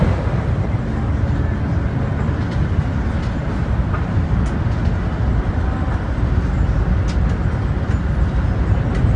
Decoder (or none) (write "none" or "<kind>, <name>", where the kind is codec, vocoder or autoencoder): none